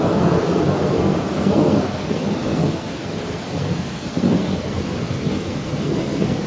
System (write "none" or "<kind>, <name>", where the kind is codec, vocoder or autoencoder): codec, SNAC